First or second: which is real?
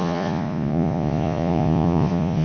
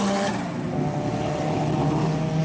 second